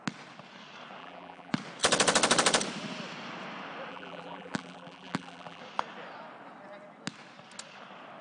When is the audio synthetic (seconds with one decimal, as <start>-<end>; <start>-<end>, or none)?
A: 1.0-1.5; 3.9-5.6